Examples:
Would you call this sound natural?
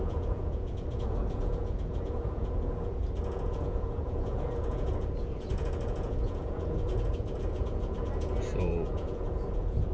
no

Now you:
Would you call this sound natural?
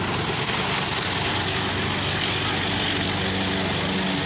yes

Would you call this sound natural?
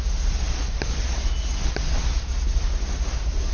yes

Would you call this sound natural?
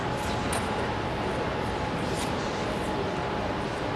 yes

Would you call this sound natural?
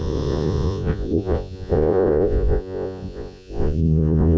no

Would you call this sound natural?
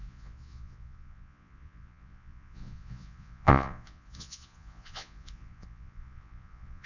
no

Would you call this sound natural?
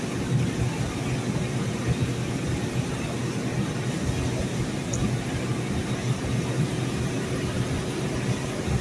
yes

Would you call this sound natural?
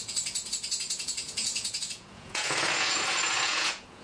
no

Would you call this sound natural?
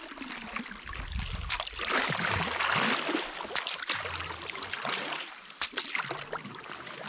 yes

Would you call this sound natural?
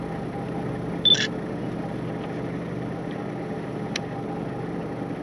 yes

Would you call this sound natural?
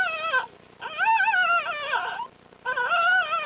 yes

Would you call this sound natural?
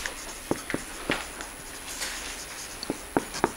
yes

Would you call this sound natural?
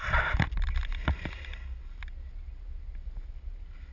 yes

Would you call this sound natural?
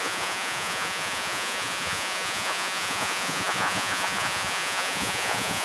no